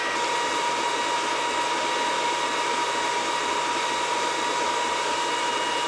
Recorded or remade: recorded